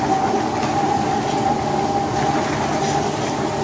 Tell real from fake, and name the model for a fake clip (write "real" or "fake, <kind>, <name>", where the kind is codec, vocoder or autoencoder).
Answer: real